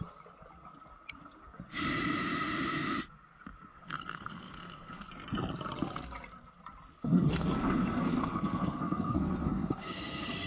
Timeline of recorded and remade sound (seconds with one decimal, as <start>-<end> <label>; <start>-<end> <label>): 0.0-3.7 recorded; 3.7-5.1 remade; 5.1-7.0 recorded; 7.0-10.5 remade